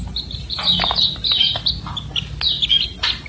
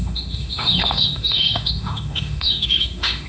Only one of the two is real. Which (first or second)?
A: first